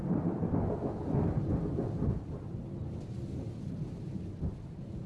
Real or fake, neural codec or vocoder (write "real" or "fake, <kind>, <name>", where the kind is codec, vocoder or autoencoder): real